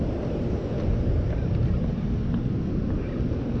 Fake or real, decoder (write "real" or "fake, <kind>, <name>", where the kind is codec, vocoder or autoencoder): real